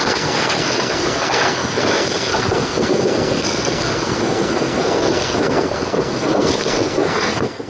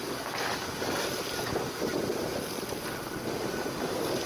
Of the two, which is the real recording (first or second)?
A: second